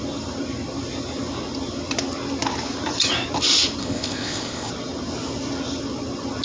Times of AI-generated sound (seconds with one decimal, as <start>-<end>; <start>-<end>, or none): 3.8-4.7